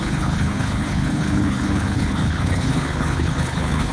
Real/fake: fake